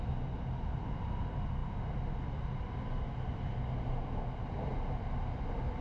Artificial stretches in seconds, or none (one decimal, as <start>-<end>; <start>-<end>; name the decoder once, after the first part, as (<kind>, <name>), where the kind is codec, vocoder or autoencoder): none